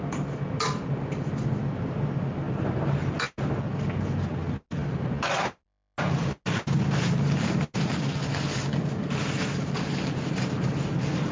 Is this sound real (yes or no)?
yes